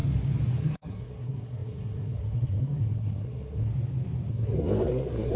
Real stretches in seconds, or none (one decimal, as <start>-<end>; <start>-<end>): 0.0-0.6; 3.7-4.3